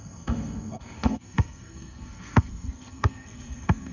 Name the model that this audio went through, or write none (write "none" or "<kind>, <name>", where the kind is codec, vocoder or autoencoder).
codec, SNAC